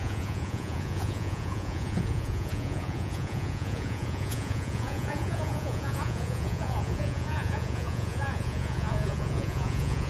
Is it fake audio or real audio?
fake